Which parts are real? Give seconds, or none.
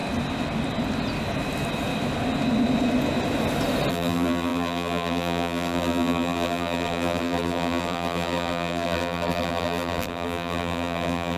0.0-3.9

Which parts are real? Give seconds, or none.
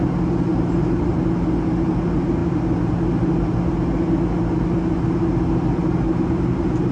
0.0-0.5; 1.1-5.8